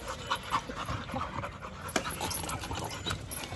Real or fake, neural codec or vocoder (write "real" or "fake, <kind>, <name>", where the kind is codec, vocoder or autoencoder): real